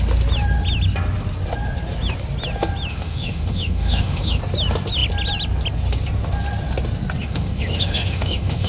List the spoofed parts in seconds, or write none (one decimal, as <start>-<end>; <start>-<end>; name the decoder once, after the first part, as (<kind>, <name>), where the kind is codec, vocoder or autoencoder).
2.9-4.4 (autoencoder, DAC-VAE); 7.2-8.7